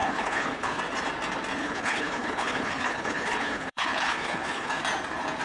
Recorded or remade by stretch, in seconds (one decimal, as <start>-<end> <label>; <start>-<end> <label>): 0.0-0.8 remade; 0.8-1.6 recorded; 1.6-4.8 remade; 4.8-5.4 recorded